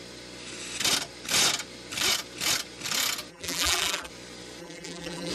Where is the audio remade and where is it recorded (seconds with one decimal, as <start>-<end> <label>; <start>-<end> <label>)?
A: 0.0-3.3 recorded; 3.3-4.1 remade; 4.1-4.6 recorded; 4.6-5.3 remade